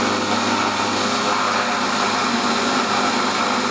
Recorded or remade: recorded